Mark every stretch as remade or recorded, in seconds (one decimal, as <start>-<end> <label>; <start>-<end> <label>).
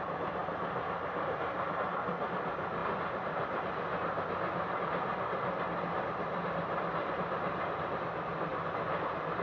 0.0-9.4 recorded